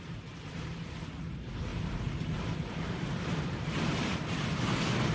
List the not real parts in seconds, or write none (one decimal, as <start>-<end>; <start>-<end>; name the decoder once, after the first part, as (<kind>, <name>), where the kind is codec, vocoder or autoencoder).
1.7-4.0 (vocoder, BigVGAN v2)